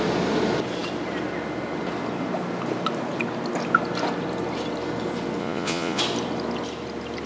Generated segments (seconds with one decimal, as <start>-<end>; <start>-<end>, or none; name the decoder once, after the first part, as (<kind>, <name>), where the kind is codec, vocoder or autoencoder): 5.4-6.0 (vocoder, Vocos)